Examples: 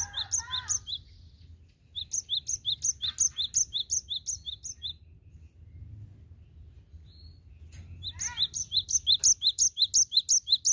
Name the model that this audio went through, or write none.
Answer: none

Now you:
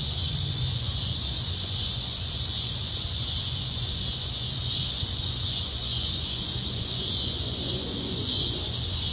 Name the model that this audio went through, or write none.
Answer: vocoder, Vocos